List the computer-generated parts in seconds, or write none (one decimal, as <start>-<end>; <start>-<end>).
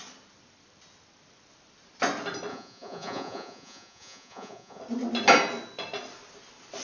2.5-4.8